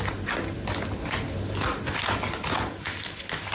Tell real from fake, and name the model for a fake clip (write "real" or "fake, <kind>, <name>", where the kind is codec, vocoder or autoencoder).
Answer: real